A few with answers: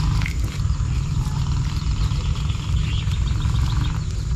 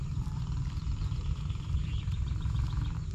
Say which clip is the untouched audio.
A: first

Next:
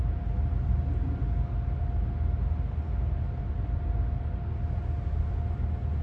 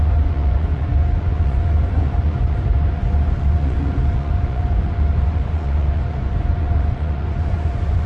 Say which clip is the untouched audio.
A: first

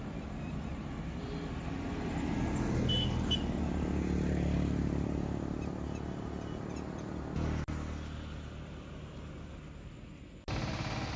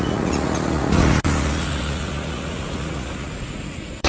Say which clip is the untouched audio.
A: first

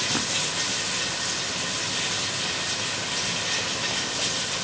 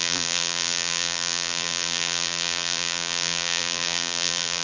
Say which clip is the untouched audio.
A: first